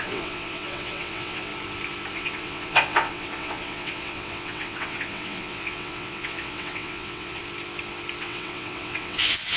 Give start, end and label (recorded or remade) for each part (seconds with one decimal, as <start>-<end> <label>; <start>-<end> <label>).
0.0-1.5 remade; 1.5-2.1 recorded; 2.1-7.4 remade; 7.4-8.2 recorded; 8.2-9.6 remade